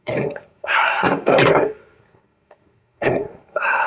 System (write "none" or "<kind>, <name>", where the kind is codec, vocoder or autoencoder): codec, SNAC